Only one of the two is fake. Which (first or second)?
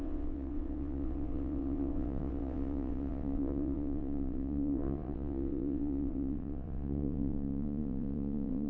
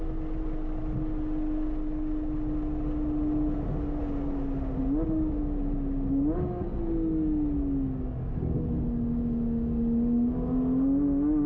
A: first